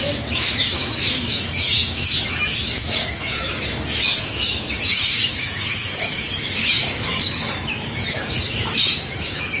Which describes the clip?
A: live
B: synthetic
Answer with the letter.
B